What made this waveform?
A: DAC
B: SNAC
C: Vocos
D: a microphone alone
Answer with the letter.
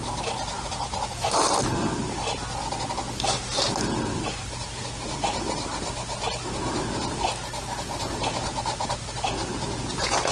D